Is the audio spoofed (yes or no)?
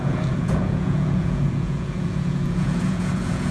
yes